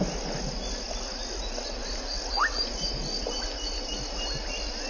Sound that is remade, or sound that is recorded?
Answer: recorded